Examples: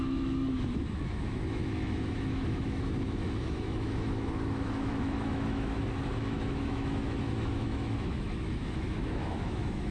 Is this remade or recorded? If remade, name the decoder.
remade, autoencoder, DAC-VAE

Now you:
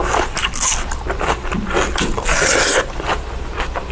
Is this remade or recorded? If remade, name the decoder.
recorded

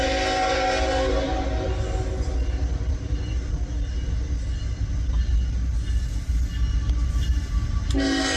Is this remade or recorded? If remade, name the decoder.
recorded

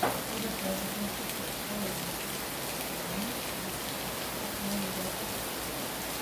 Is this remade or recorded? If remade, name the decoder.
recorded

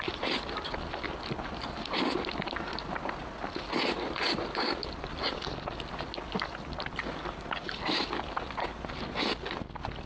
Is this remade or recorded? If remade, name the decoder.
recorded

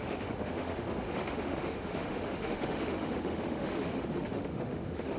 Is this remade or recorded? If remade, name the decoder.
remade, autoencoder, DAC-VAE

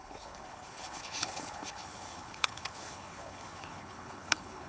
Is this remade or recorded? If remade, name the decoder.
remade, codec, HILCodec